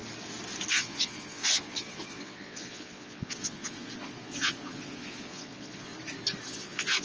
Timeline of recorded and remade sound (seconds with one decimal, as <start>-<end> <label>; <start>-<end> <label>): 0.0-0.7 recorded; 0.7-5.9 remade; 5.9-6.5 recorded; 6.5-7.0 remade